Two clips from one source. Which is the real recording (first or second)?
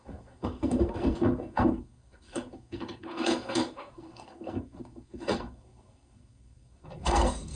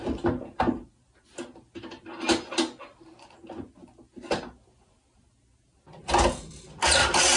second